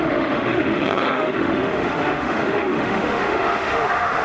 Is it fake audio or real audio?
fake